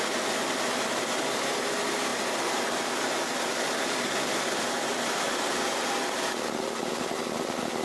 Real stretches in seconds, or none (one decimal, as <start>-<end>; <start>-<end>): 0.0-7.8